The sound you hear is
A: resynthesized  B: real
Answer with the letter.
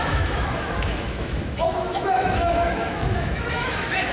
A